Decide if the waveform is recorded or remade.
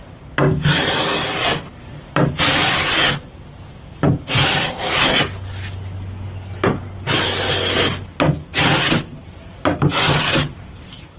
recorded